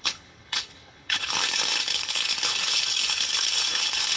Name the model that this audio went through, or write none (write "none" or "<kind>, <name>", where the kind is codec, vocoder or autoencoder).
codec, HILCodec